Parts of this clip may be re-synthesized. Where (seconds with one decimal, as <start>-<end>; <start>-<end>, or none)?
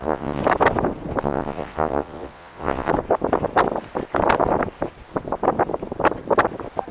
0.0-0.4; 1.2-2.9